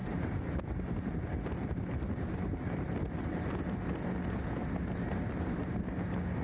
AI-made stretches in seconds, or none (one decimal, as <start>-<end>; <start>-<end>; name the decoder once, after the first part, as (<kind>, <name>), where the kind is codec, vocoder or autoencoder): none